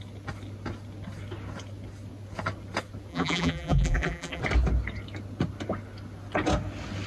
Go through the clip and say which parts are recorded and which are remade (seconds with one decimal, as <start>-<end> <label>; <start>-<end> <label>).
0.0-3.1 recorded; 3.1-4.4 remade; 4.4-7.1 recorded